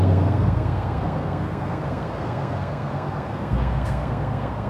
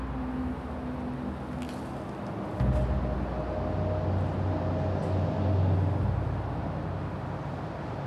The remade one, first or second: first